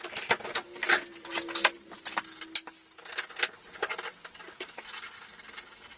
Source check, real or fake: real